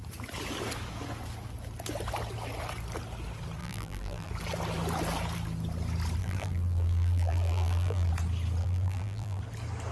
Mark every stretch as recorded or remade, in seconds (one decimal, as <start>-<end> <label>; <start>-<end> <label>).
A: 0.0-3.6 recorded; 3.6-4.3 remade; 4.3-6.2 recorded; 6.2-8.1 remade; 8.1-8.6 recorded; 8.6-9.4 remade; 9.4-9.9 recorded